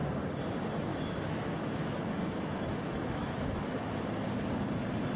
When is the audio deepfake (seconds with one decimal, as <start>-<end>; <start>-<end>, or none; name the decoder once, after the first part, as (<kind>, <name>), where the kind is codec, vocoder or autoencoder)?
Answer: 0.9-3.9 (autoencoder, DAC-VAE)